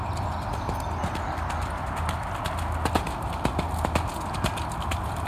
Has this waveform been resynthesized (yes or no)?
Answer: no